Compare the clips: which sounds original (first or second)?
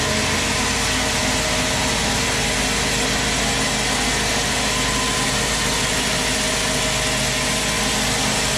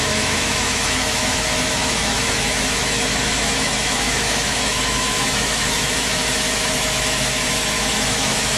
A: first